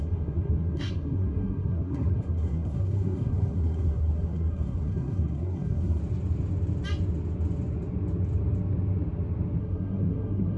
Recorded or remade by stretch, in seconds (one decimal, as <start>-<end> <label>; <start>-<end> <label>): 0.0-6.0 remade; 6.0-9.6 recorded; 9.6-10.6 remade